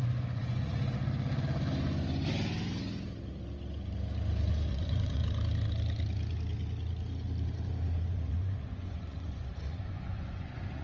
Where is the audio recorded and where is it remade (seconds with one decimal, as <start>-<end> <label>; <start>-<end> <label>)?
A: 0.0-1.0 remade; 1.0-4.7 recorded; 4.7-5.2 remade; 5.2-8.1 recorded; 8.1-10.8 remade